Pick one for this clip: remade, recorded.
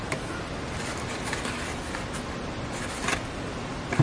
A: recorded